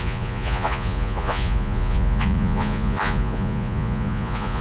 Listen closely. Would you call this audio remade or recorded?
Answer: remade